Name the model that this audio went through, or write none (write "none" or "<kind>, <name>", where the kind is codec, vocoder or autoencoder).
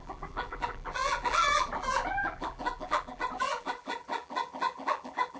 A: vocoder, BigVGAN v2